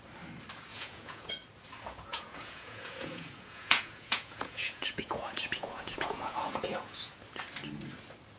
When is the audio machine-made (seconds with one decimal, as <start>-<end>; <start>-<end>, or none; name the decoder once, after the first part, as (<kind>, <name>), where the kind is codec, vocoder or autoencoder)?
0.7-1.3 (vocoder, Vocos); 2.1-7.1

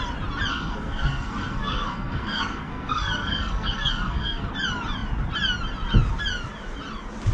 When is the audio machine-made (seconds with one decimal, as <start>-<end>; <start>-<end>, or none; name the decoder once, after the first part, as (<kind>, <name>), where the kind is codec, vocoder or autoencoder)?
0.5-4.5 (codec, SNAC)

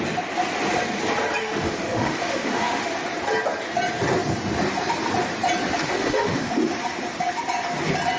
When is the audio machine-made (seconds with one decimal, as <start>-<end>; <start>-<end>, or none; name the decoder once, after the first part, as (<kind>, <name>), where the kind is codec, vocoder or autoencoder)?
1.4-2.8 (autoencoder, DAC-VAE); 5.8-6.5

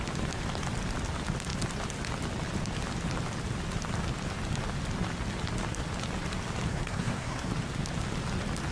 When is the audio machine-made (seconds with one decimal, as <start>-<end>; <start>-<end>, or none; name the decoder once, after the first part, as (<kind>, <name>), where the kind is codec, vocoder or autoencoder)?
6.7-7.5 (codec, SNAC)

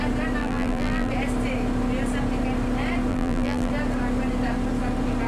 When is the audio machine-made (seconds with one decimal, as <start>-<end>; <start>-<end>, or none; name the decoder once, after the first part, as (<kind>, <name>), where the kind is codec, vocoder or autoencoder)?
0.4-1.1 (vocoder, BigVGAN v2); 3.1-3.7

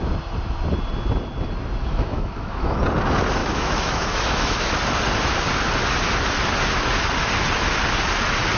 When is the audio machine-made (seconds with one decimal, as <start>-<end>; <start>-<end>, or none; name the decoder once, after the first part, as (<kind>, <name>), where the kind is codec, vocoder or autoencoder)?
1.8-2.8 (autoencoder, DAC-VAE); 3.4-4.7

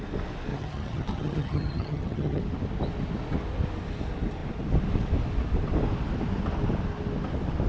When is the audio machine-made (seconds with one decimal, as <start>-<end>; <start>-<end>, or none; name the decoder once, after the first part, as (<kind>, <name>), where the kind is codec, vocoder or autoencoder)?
0.5-2.4 (vocoder, HiFi-GAN)

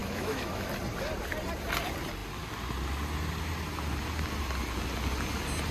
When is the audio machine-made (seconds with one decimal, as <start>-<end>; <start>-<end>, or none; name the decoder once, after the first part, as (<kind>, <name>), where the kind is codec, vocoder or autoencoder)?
0.0-0.7 (autoencoder, DAC-VAE)